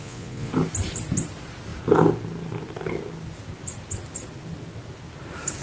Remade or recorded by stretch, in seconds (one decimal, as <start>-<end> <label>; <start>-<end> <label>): 0.0-0.5 remade; 0.5-5.6 recorded